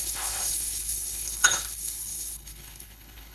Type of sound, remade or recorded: remade